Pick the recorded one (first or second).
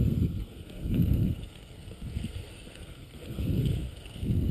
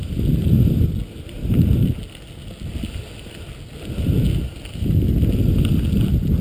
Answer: second